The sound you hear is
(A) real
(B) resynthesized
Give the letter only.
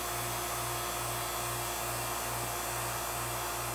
A